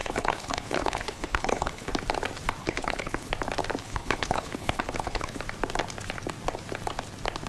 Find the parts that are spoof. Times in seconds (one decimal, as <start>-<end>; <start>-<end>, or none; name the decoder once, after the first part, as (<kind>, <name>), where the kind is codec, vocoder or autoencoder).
0.0-1.9 (codec, HILCodec); 2.6-3.3; 3.8-5.4